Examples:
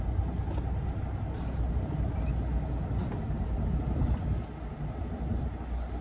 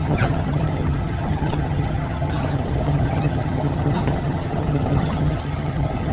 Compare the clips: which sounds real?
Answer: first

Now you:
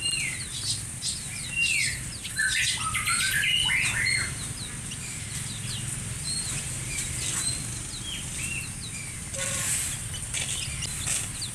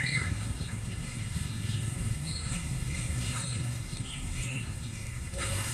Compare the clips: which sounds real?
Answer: first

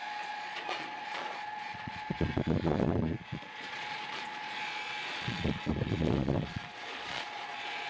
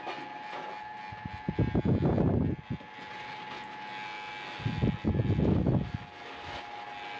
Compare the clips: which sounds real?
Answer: second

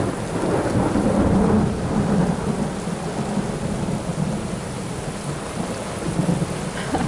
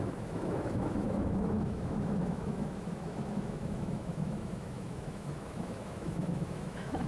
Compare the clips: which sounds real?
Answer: first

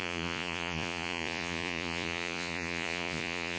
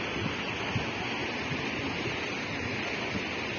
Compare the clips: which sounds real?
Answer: second